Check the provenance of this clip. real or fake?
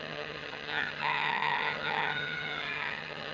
fake